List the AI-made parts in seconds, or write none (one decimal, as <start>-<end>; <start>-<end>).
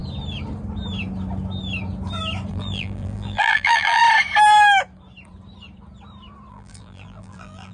2.5-4.0; 6.5-7.7